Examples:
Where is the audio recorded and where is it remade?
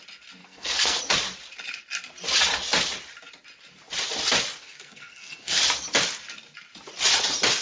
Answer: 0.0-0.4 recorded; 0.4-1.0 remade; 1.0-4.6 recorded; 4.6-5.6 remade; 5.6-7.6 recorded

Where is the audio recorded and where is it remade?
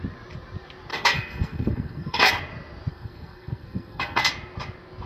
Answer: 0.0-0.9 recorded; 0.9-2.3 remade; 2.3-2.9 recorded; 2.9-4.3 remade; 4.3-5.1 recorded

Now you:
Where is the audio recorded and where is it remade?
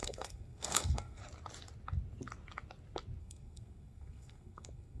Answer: 0.0-1.2 remade; 1.2-3.2 recorded; 3.2-5.0 remade